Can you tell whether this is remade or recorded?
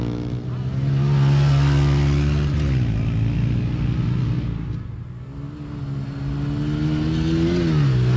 recorded